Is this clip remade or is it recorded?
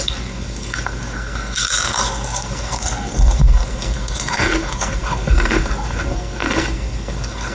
remade